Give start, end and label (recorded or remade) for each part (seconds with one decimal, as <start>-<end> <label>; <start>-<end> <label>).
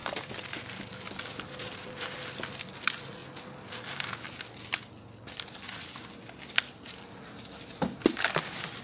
0.0-8.8 recorded